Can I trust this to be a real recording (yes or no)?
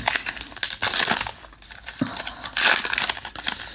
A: yes